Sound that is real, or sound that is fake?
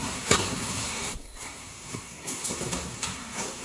fake